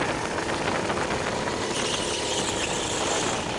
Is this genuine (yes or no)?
yes